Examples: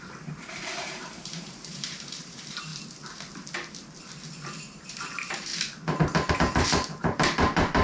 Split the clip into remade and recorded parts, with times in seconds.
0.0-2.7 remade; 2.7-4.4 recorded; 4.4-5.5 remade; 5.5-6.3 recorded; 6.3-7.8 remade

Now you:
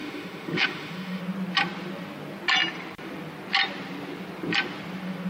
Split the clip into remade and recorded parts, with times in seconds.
0.0-1.2 remade; 1.2-5.3 recorded